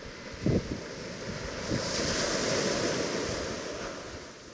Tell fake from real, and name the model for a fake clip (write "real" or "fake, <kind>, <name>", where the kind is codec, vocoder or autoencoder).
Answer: real